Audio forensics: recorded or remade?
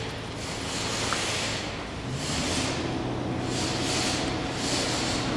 recorded